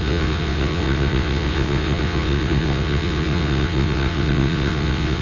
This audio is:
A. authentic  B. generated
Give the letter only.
B